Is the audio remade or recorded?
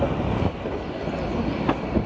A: recorded